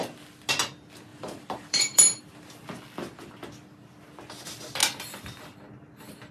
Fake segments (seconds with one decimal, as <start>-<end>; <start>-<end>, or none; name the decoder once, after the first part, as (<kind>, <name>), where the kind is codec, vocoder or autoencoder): 1.1-2.4 (vocoder, BigVGAN v2)